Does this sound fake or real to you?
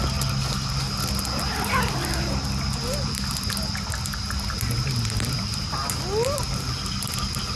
real